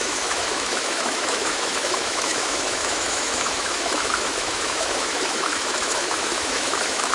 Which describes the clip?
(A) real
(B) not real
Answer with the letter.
B